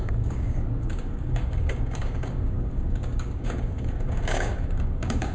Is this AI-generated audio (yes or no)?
yes